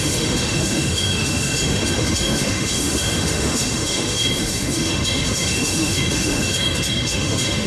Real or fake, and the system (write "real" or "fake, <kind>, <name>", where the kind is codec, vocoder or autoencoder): fake, autoencoder, DAC-VAE